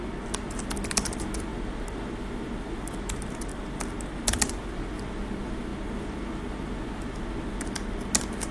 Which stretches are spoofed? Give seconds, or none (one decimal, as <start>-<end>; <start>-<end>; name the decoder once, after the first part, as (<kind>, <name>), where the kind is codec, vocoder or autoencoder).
none

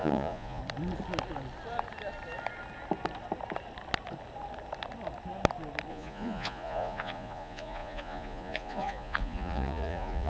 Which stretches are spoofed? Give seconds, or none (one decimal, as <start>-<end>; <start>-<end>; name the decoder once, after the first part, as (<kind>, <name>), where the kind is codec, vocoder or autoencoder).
0.0-0.6 (vocoder, Vocos); 5.9-10.3

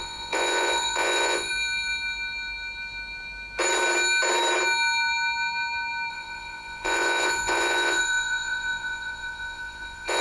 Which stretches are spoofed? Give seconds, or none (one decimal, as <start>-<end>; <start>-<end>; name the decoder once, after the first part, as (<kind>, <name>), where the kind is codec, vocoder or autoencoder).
0.0-1.5 (vocoder, Vocos); 6.1-10.2

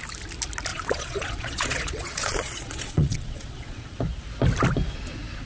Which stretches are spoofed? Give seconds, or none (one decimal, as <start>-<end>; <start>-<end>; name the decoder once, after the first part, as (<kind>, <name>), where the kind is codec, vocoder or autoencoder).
0.7-4.0 (vocoder, Vocos)

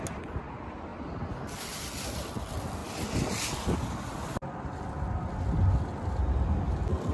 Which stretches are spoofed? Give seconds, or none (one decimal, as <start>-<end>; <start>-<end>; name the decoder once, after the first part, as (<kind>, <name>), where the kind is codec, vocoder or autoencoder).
none

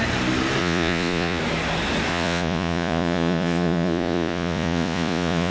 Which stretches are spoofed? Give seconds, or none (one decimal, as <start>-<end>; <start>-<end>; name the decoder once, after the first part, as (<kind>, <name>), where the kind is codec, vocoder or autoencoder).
0.6-1.4 (vocoder, Vocos); 2.1-5.5